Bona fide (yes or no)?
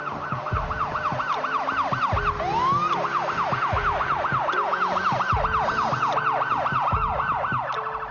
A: yes